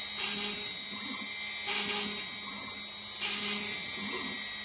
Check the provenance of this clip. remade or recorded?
recorded